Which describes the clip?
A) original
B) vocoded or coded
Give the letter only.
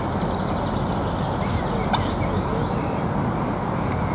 A